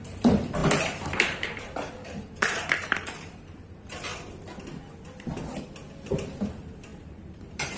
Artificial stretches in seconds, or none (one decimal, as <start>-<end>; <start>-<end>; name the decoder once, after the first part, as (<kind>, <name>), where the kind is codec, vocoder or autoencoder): 0.0-4.1 (vocoder, BigVGAN v2); 6.1-7.8